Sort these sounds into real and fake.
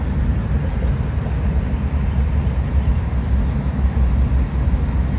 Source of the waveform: real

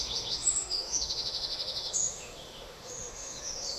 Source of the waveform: fake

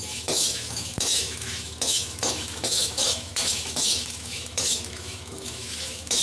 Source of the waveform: fake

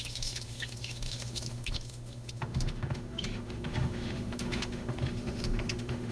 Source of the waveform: fake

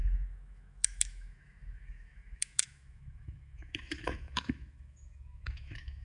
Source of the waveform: fake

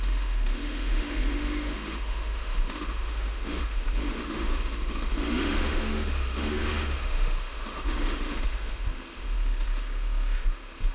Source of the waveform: fake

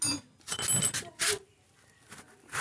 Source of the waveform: real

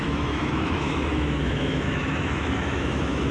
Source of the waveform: fake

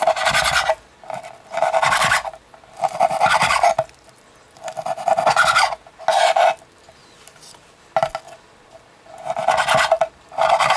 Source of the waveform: real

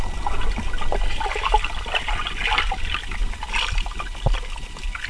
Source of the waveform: real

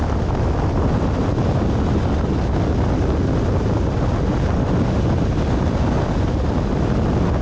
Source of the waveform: real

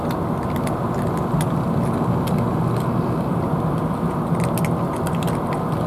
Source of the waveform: real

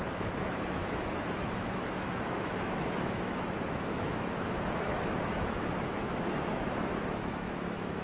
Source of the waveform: fake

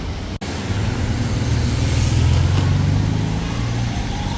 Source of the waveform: real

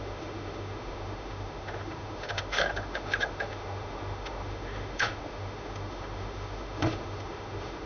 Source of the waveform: fake